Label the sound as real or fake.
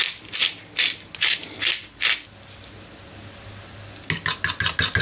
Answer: real